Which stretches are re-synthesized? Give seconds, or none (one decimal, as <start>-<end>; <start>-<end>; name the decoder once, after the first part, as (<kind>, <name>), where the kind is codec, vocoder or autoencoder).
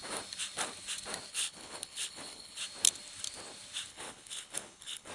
1.3-2.6 (codec, HILCodec); 3.9-5.1